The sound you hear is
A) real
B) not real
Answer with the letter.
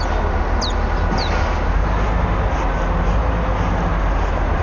A